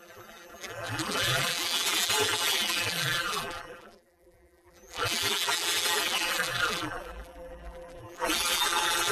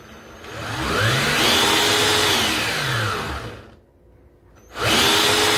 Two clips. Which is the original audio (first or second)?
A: second